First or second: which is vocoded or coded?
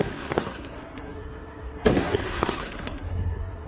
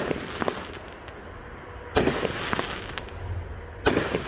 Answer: first